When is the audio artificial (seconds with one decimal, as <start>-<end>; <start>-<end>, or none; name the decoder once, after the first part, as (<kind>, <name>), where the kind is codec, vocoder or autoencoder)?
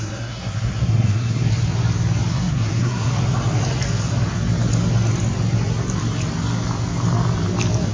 0.0-1.5 (codec, SNAC); 2.3-3.1